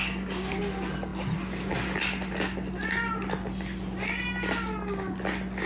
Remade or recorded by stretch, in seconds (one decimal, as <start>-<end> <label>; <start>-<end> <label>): 0.0-0.6 remade; 0.6-5.7 recorded